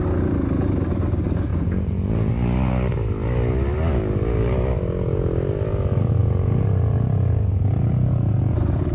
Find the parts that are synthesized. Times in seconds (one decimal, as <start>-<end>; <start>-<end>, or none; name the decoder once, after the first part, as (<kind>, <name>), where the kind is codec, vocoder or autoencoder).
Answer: 1.5-2.3 (vocoder, Vocos)